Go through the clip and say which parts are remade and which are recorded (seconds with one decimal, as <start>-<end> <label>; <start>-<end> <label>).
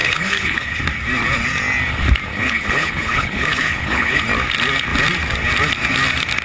0.0-0.8 remade; 0.8-2.3 recorded; 2.3-4.2 remade; 4.2-6.4 recorded